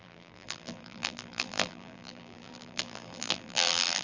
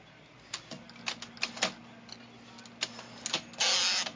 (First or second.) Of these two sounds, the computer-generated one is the first